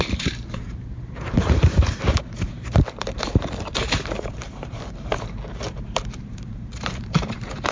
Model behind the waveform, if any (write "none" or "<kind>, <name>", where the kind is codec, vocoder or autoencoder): vocoder, BigVGAN v2